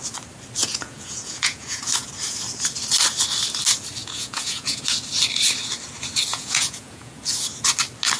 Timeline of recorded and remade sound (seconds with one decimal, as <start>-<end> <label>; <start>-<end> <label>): 0.0-0.6 recorded; 0.6-2.1 remade; 2.1-4.0 recorded; 4.0-4.8 remade; 4.8-6.3 recorded; 6.3-7.2 remade; 7.2-8.2 recorded